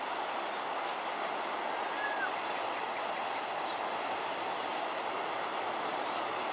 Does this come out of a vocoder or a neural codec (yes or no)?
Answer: no